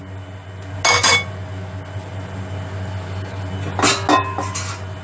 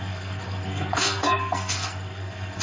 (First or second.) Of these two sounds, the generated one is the second